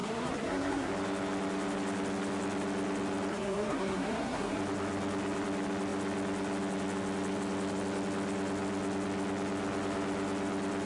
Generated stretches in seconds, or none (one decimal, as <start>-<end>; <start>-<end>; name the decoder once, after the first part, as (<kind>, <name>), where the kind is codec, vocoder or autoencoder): 0.0-0.9 (codec, SNAC); 3.3-4.6